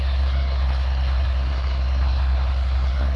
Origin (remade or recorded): remade